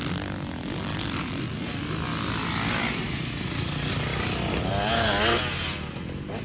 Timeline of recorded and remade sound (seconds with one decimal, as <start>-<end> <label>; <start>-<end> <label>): 0.0-0.9 recorded; 0.9-1.4 remade; 1.4-2.1 recorded; 2.1-2.7 remade; 2.7-6.4 recorded